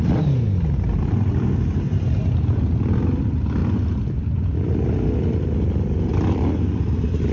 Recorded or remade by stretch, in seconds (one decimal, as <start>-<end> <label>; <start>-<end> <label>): 0.0-7.3 recorded